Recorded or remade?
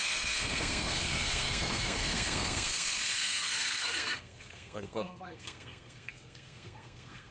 remade